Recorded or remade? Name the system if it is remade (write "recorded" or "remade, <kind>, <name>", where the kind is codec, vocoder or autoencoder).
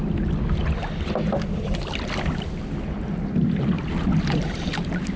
recorded